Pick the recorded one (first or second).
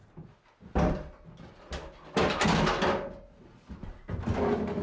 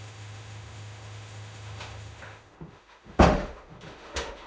first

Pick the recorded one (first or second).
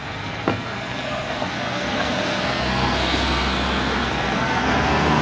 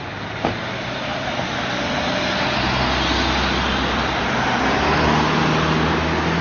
second